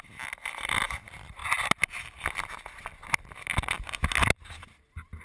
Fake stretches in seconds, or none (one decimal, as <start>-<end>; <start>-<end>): none